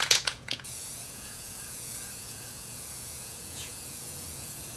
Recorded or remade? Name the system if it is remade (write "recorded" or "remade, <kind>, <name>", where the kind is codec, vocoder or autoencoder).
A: remade, vocoder, Vocos